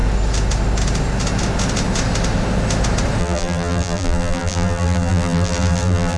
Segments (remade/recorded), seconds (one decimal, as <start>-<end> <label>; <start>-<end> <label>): 0.0-3.2 recorded; 3.2-6.2 remade